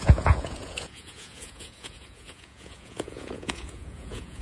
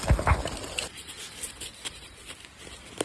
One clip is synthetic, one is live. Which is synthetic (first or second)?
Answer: first